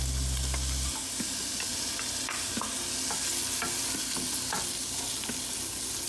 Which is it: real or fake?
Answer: real